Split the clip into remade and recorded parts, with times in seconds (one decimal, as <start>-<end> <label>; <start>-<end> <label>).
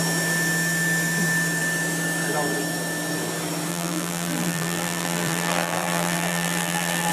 0.0-3.7 recorded; 3.7-7.1 remade